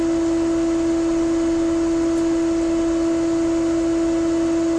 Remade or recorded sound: recorded